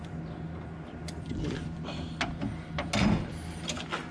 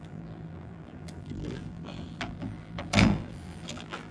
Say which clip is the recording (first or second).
first